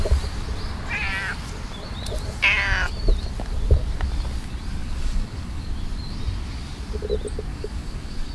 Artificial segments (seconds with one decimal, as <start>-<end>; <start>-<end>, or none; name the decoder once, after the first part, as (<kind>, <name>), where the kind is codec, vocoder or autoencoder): 4.8-5.7 (codec, DAC); 7.5-8.3